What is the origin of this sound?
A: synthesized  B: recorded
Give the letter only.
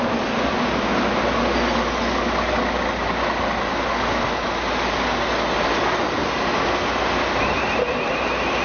B